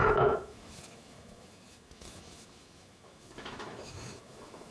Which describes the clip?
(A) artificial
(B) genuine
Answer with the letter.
A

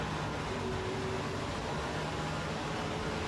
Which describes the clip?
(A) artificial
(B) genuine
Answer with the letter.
B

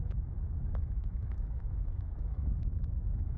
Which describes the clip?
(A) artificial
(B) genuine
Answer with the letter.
A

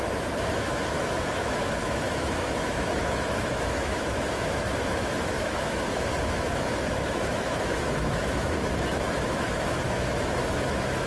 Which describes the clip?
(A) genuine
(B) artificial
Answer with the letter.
B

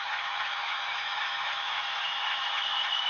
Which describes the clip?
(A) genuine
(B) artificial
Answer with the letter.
B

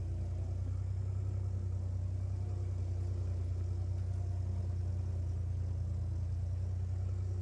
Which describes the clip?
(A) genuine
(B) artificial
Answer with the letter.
A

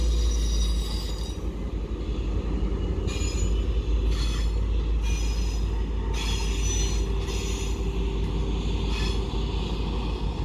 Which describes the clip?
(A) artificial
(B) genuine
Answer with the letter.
B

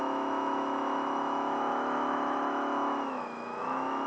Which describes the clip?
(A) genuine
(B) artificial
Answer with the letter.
B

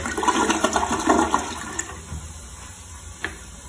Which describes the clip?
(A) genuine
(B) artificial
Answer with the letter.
A